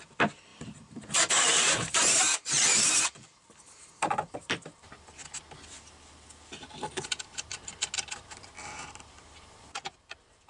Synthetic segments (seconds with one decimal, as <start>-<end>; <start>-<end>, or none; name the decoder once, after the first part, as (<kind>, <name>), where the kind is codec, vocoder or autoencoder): 0.5-1.1 (vocoder, BigVGAN v2); 1.5-4.9; 8.6-9.3